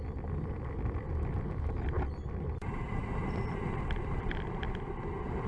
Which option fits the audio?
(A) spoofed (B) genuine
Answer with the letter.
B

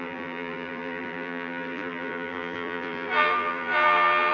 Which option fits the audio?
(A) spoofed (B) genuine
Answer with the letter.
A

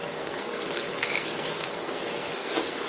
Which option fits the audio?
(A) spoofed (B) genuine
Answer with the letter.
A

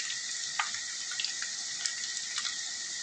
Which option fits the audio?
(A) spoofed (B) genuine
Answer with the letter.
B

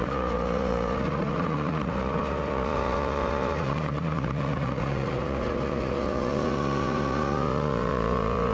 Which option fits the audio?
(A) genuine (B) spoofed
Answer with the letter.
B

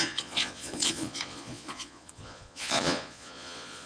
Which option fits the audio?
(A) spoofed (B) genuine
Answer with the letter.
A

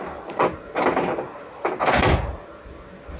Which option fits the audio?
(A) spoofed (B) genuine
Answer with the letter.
B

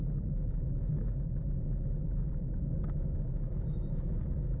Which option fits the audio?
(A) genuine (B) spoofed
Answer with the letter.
B